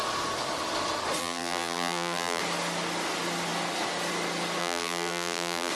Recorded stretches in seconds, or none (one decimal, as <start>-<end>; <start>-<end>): 0.0-1.2; 2.4-4.6